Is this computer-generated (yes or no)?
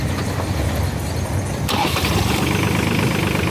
no